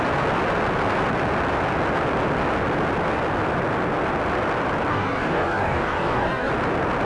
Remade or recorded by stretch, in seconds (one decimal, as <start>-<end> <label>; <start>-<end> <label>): 0.0-4.9 recorded; 4.9-6.5 remade; 6.5-7.0 recorded